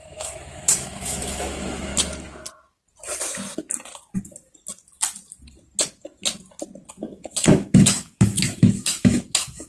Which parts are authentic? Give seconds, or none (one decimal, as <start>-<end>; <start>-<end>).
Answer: 1.9-6.9